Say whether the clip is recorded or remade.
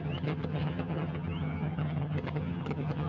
remade